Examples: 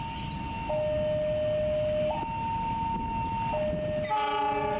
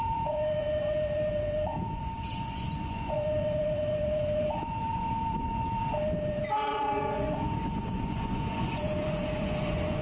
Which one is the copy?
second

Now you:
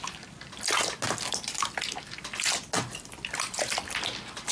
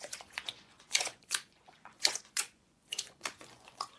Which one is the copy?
second